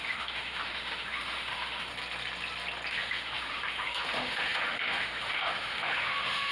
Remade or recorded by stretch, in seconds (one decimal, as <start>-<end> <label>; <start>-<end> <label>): 0.0-1.9 remade; 1.9-2.9 recorded; 2.9-6.5 remade